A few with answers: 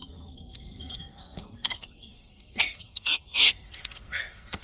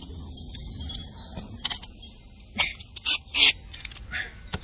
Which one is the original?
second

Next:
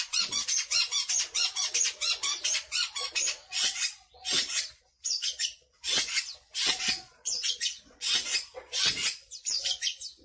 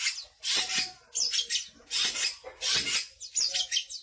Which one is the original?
second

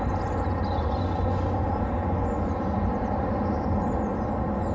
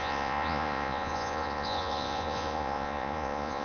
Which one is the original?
first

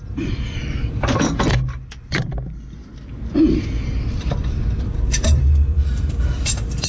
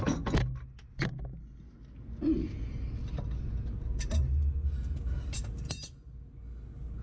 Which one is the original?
second